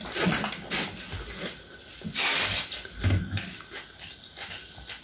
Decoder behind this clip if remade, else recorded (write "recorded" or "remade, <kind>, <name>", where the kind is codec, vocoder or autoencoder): recorded